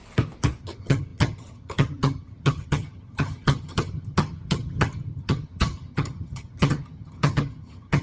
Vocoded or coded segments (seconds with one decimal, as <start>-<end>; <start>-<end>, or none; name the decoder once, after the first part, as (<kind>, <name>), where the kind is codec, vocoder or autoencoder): 0.6-8.0 (vocoder, HiFi-GAN)